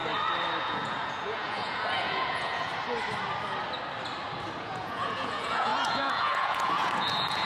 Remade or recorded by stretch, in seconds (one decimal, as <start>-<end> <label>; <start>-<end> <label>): 0.0-0.6 recorded; 0.6-2.7 remade; 2.7-4.6 recorded; 4.6-7.5 remade